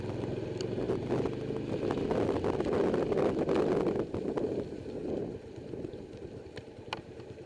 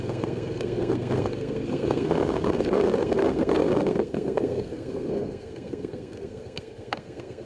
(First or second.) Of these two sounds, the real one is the first